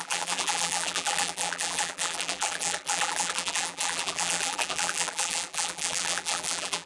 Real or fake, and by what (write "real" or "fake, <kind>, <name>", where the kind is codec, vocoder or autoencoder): fake, vocoder, BigVGAN v2